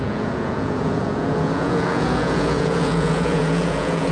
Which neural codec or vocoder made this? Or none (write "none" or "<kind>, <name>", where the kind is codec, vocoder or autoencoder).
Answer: vocoder, Vocos